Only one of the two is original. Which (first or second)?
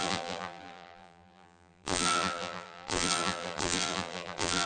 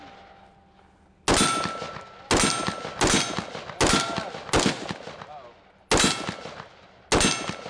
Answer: second